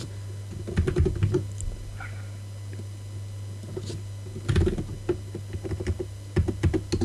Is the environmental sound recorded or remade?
recorded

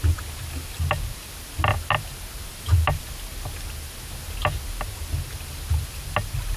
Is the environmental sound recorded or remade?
recorded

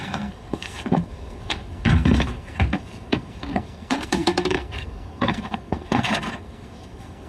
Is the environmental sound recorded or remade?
remade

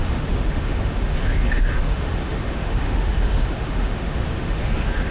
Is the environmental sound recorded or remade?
remade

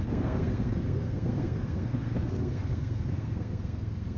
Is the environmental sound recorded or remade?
remade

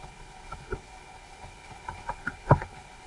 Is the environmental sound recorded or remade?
remade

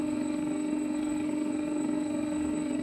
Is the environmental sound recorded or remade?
remade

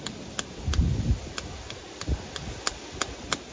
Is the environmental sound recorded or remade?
recorded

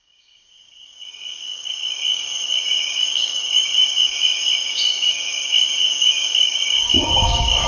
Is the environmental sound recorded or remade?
remade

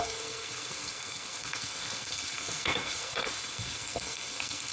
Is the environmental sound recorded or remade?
remade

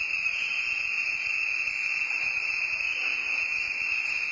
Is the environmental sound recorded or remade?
recorded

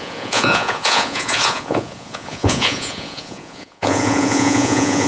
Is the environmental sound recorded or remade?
remade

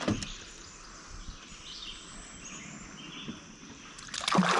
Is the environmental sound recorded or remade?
recorded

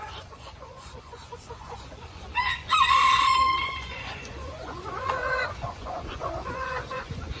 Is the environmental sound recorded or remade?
remade